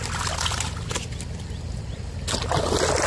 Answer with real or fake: real